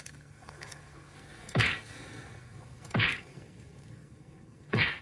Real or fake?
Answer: fake